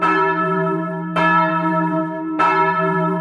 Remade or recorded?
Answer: remade